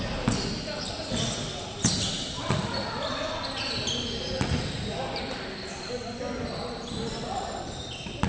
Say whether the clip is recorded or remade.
recorded